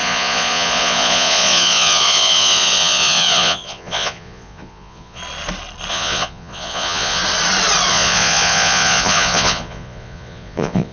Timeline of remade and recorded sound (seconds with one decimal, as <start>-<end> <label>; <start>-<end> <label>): 0.0-5.2 remade; 5.2-5.9 recorded; 5.9-7.2 remade; 7.2-7.9 recorded; 7.9-10.9 remade